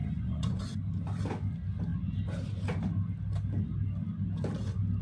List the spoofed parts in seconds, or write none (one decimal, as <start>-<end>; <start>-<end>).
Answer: 0.0-0.6